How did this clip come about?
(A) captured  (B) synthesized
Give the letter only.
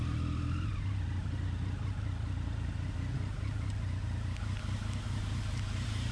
A